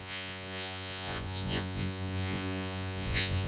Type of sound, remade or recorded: remade